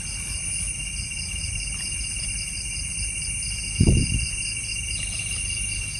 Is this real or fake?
fake